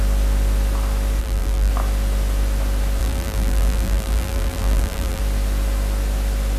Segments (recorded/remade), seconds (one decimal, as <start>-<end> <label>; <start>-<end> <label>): 0.0-1.2 recorded; 1.2-1.7 remade; 1.7-3.0 recorded; 3.0-5.2 remade; 5.2-6.6 recorded